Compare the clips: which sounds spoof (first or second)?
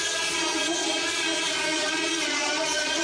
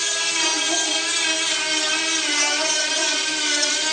first